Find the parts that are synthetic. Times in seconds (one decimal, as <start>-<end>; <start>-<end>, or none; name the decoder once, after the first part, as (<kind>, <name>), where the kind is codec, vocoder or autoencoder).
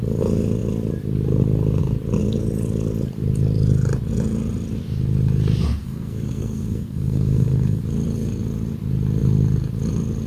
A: 5.8-7.8 (codec, SNAC)